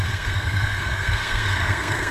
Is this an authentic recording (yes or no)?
no